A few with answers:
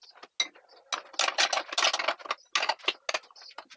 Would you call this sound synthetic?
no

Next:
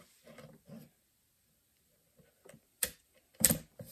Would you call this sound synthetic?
yes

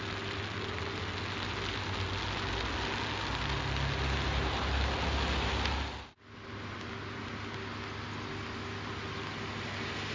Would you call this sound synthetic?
no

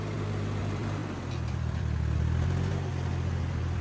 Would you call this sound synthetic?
yes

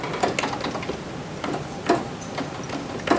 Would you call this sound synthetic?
no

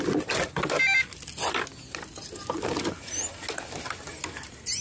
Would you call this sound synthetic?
no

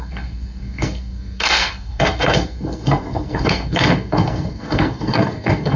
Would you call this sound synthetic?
yes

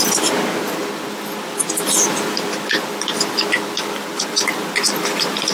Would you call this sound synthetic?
no